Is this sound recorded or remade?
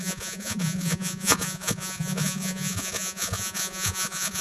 remade